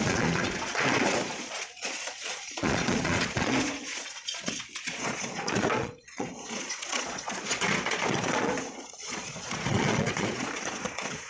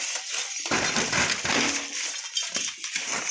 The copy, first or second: first